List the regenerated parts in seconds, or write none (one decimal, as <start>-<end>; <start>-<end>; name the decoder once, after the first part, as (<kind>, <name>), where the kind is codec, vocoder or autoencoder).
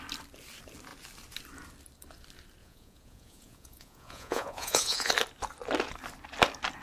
2.6-5.1 (vocoder, Vocos)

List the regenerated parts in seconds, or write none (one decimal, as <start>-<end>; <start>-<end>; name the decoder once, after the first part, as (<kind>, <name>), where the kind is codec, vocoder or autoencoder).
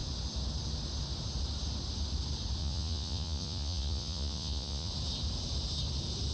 2.6-4.9 (vocoder, Vocos)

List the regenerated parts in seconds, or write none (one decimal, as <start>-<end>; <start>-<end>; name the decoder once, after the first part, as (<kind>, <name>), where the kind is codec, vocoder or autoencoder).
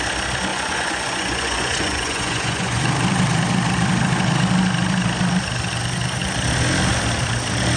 0.5-2.8 (vocoder, Vocos)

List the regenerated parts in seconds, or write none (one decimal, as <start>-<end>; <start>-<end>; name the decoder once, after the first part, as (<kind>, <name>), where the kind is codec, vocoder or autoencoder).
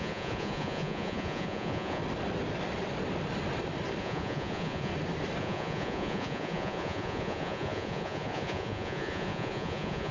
0.0-2.0 (vocoder, Vocos); 4.0-4.9; 5.4-10.1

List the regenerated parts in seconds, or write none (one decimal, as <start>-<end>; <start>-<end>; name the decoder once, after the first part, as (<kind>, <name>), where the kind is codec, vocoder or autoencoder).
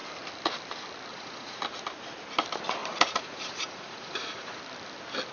1.1-1.6 (vocoder, Vocos); 2.8-4.6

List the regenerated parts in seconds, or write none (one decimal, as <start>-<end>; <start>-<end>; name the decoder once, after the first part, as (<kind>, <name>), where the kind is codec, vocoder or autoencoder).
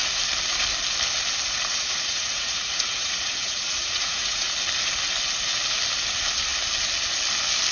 1.7-4.5 (vocoder, Vocos)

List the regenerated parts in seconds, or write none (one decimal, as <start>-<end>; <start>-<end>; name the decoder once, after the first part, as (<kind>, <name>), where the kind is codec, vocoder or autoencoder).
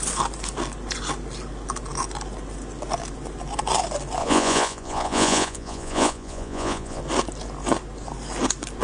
4.2-7.0 (vocoder, Vocos)